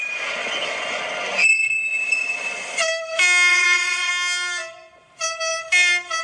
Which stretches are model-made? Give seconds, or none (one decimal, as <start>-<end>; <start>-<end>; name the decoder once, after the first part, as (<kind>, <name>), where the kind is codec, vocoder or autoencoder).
0.4-1.0 (vocoder, Vocos); 3.5-4.1